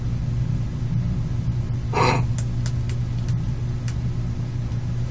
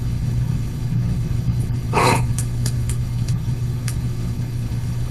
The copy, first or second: second